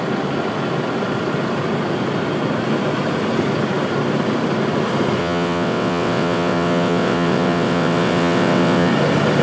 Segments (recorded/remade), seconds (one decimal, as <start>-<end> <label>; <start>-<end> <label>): 0.0-5.2 recorded; 5.2-8.9 remade; 8.9-9.4 recorded